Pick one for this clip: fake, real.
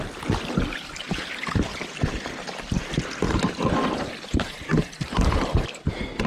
real